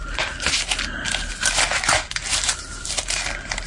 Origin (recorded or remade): recorded